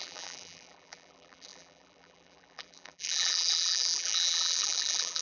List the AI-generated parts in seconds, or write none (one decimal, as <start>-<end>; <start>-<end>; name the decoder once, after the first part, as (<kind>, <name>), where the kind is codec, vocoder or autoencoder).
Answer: 0.0-5.2 (vocoder, BigVGAN v2)